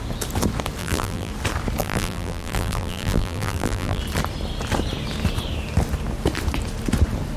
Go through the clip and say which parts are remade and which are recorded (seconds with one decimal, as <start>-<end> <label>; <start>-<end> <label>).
0.0-0.8 recorded; 0.8-1.3 remade; 1.3-1.8 recorded; 1.8-4.0 remade; 4.0-7.4 recorded